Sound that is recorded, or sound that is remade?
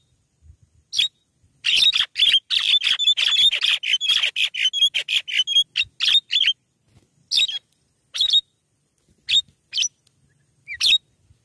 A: recorded